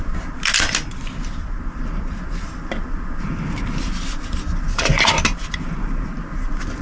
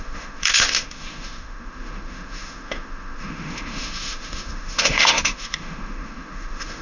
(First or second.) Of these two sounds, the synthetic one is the second